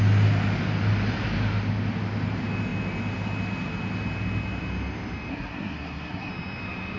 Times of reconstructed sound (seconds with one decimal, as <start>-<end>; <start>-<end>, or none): 5.3-6.3